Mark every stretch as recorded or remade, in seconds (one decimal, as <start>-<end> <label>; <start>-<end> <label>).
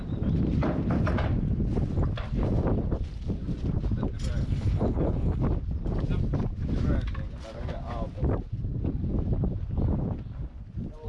0.0-4.4 recorded; 4.4-5.4 remade; 5.4-11.1 recorded